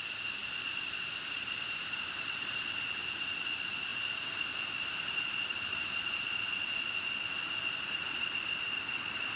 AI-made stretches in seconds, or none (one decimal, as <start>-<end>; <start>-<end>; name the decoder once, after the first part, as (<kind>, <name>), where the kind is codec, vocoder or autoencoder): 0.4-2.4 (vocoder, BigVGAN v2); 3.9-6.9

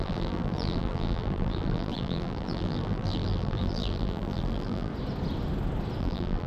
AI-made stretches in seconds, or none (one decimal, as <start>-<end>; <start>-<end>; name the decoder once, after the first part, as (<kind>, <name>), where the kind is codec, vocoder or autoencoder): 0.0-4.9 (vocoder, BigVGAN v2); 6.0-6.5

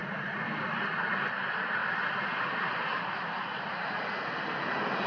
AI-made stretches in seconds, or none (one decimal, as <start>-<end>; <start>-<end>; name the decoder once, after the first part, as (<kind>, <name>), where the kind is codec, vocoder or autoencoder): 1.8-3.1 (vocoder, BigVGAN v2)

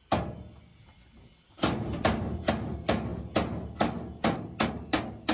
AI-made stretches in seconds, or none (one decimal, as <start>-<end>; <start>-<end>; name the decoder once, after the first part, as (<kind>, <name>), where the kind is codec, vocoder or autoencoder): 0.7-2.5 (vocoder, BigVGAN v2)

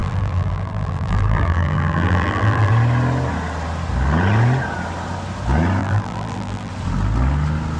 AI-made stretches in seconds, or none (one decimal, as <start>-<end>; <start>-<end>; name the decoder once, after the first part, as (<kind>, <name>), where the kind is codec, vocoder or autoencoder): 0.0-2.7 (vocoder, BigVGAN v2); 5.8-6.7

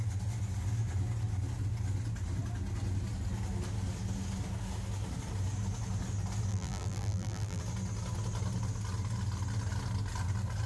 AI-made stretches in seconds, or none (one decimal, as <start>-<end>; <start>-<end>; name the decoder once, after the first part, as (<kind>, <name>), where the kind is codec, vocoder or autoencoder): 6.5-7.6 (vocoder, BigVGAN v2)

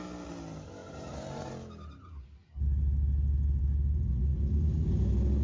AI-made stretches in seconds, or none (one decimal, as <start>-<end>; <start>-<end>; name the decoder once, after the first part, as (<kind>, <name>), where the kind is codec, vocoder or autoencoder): 0.8-1.5 (vocoder, BigVGAN v2); 4.3-4.9